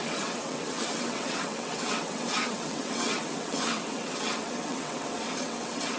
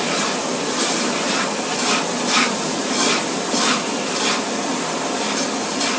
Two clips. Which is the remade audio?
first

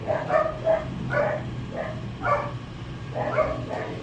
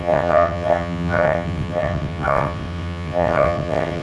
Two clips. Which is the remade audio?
second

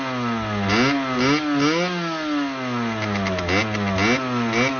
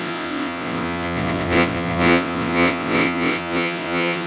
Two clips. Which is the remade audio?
second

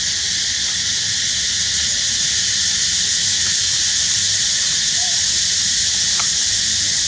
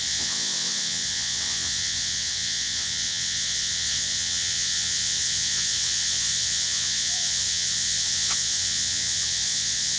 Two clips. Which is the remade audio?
second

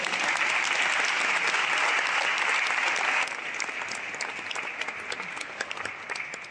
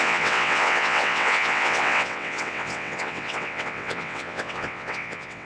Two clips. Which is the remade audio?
second